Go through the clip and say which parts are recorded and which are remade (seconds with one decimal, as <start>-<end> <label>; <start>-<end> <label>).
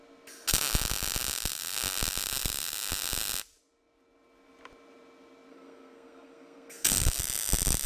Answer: 0.0-5.5 recorded; 5.5-7.2 remade; 7.2-7.9 recorded